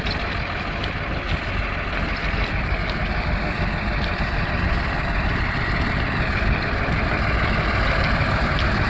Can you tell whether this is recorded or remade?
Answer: recorded